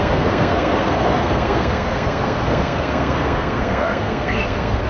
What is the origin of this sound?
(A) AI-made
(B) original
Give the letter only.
A